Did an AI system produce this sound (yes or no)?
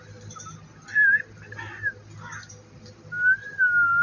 no